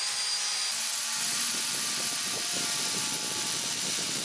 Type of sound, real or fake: real